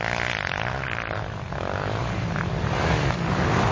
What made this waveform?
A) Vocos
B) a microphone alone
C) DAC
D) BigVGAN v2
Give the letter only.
B